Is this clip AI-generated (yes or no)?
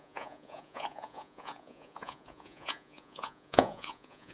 yes